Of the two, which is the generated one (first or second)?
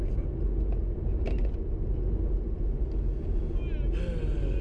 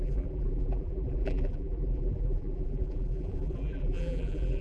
second